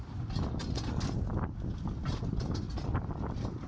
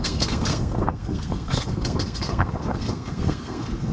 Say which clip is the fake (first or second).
second